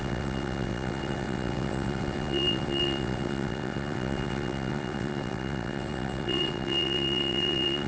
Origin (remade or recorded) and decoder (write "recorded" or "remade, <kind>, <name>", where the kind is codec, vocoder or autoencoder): remade, vocoder, WaveNeXt